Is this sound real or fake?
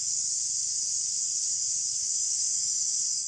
fake